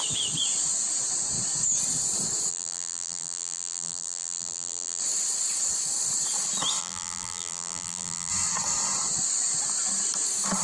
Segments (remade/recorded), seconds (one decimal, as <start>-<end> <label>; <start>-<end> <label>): 0.0-2.5 recorded; 2.5-5.0 remade; 5.0-6.8 recorded; 6.8-8.3 remade; 8.3-10.6 recorded